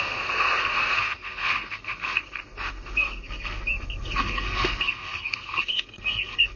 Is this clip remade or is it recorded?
remade